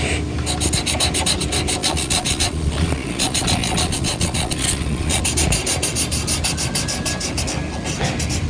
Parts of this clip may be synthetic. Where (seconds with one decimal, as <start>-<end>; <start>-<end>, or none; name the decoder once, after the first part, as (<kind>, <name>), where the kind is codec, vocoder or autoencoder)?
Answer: 1.8-5.2 (vocoder, Vocos)